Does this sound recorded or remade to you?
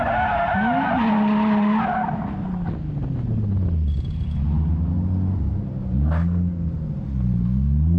recorded